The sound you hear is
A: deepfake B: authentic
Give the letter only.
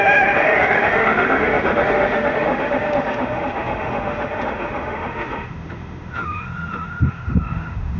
A